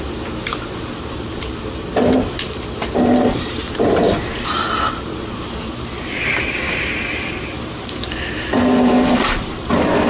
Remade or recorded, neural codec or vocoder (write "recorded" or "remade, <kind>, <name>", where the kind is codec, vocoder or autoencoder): remade, vocoder, BigVGAN v2